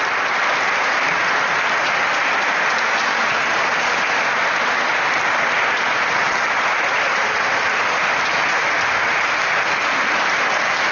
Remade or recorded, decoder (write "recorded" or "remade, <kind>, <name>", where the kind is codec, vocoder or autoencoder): recorded